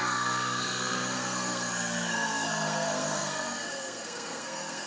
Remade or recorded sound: remade